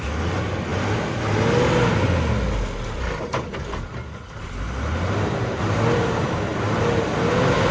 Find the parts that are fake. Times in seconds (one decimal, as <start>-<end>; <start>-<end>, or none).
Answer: none